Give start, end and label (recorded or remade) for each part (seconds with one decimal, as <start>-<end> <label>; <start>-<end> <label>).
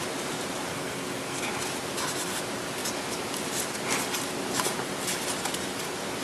0.0-0.7 recorded; 0.7-1.5 remade; 1.5-6.2 recorded